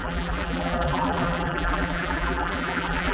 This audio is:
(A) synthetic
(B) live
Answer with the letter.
A